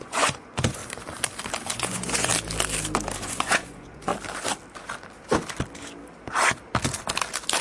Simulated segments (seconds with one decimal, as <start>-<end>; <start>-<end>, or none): 0.0-0.8; 1.7-2.3; 3.2-4.1